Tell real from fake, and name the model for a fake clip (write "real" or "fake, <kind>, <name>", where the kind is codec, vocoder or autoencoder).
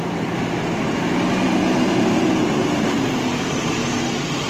real